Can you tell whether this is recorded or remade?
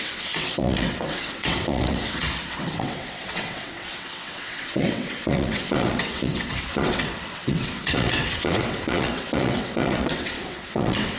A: remade